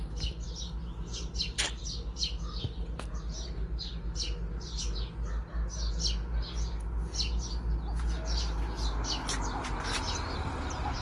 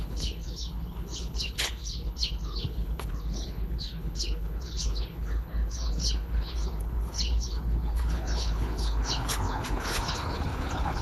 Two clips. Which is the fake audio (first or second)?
second